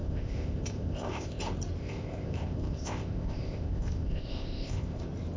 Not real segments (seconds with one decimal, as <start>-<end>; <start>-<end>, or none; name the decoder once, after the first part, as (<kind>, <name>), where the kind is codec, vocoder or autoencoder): 0.0-1.4 (codec, ZipCodec); 1.8-5.0